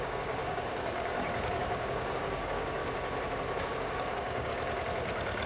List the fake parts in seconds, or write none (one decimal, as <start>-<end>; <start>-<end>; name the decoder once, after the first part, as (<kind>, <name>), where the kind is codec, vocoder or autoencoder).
0.0-2.8 (codec, DAC); 3.6-4.5